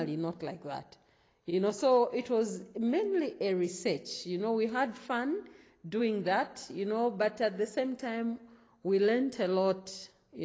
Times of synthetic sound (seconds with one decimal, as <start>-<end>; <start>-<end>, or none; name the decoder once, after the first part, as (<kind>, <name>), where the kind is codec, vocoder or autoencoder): none